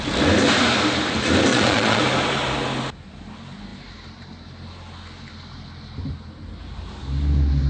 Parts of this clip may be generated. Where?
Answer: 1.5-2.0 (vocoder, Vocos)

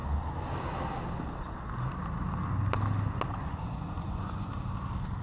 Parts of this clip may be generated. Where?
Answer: 3.4-4.5 (vocoder, Vocos)

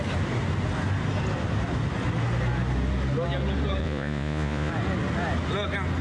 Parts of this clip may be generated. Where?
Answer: 3.8-4.7 (vocoder, Vocos)

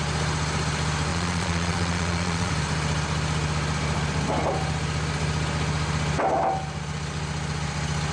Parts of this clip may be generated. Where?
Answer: 1.1-2.5 (vocoder, Vocos)

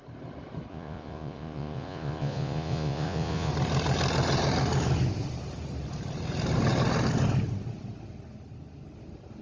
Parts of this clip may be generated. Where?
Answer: 0.7-3.5 (vocoder, Vocos)

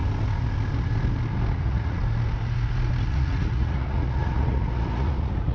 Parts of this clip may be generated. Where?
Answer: 1.5-2.0 (vocoder, Vocos); 3.1-5.5